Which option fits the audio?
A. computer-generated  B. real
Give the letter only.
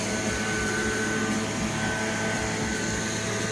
B